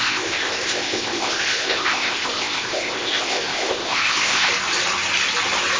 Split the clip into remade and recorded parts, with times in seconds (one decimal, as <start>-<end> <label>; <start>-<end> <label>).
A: 0.0-4.5 remade; 4.5-5.8 recorded